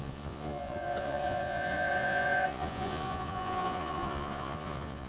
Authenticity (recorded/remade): remade